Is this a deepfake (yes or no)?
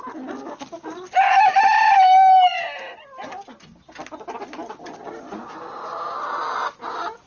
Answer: no